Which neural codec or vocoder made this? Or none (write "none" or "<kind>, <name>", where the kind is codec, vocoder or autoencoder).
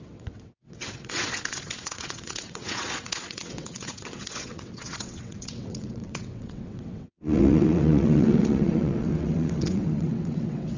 vocoder, WaveNeXt